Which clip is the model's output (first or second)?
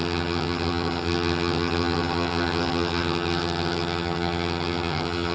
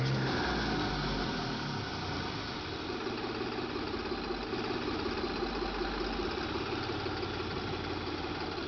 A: first